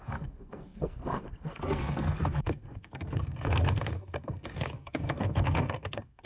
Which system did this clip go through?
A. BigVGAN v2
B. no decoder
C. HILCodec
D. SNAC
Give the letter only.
D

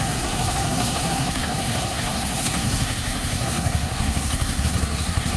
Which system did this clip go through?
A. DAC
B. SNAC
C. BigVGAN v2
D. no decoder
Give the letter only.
B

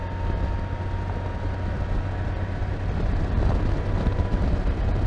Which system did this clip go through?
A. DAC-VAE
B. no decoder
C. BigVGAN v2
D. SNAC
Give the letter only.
B